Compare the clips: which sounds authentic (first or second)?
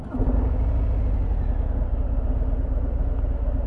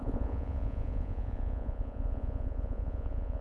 first